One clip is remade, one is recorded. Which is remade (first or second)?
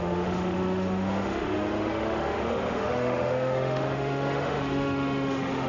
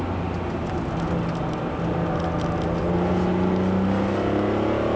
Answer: first